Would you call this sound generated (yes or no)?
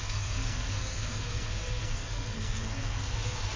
yes